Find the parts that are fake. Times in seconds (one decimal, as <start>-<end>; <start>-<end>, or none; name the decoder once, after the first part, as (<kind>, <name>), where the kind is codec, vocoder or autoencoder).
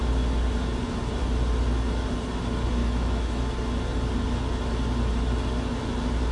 2.8-3.4 (autoencoder, DAC-VAE)